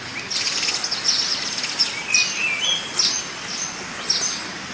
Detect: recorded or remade recorded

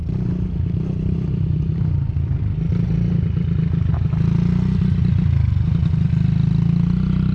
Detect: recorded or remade recorded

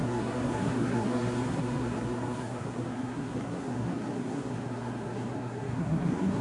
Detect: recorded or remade remade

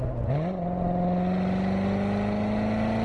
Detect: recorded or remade recorded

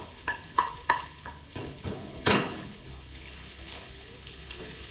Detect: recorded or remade remade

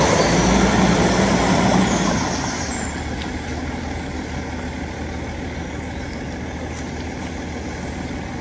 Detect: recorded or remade recorded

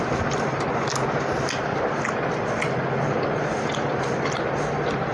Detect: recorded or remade recorded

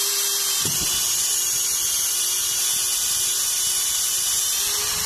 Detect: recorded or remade recorded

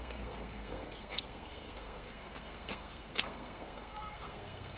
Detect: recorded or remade remade